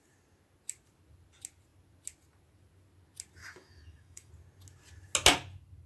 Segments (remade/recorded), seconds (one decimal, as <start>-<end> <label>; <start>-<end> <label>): 0.0-3.4 recorded; 3.4-4.3 remade; 4.3-5.9 recorded